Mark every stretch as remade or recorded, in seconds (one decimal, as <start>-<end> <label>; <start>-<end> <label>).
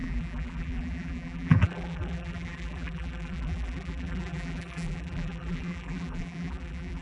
0.0-7.0 remade